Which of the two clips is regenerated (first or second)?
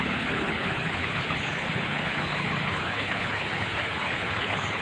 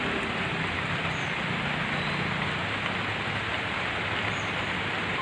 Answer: first